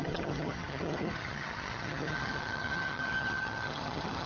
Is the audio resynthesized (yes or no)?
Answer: yes